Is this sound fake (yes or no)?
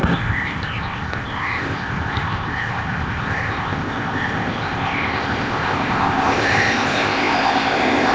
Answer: yes